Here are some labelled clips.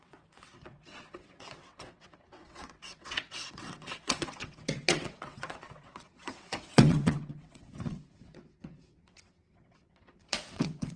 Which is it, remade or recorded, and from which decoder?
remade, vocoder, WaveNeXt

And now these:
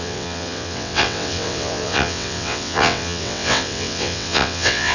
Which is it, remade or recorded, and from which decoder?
remade, vocoder, WaveNeXt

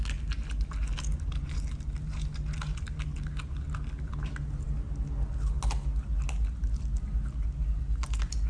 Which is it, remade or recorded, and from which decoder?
recorded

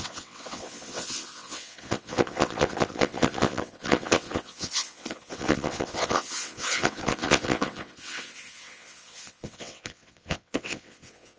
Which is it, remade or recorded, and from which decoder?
remade, vocoder, WaveNeXt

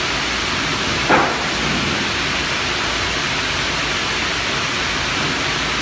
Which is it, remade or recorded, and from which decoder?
recorded